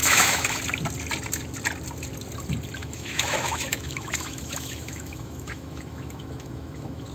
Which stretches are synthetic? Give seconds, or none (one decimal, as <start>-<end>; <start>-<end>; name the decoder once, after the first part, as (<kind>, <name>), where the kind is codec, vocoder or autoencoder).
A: 0.0-0.6 (autoencoder, DAC-VAE); 2.8-7.1

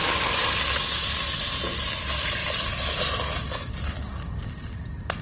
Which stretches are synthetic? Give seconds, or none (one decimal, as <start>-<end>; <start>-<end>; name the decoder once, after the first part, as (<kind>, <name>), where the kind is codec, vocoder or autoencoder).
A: none